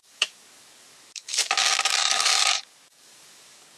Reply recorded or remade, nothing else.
remade